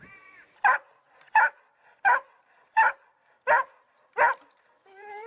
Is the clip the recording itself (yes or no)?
no